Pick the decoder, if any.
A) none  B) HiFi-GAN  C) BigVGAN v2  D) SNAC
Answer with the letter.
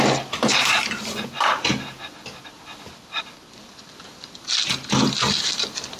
A